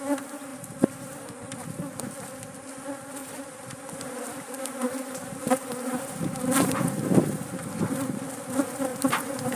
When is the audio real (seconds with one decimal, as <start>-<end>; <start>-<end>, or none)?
0.0-3.2; 7.0-8.9